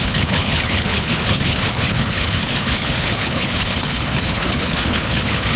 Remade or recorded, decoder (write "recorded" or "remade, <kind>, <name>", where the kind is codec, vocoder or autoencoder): remade, codec, HILCodec